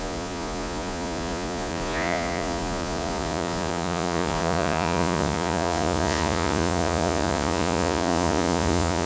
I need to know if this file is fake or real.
fake